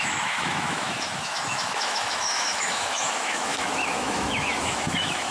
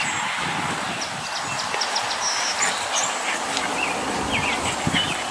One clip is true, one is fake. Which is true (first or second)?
second